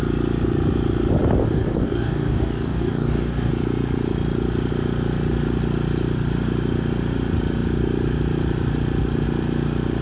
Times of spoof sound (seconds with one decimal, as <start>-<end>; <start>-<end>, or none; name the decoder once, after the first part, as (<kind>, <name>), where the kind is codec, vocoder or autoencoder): 1.4-3.5 (codec, DAC)